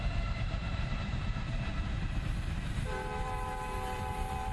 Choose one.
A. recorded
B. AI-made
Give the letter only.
B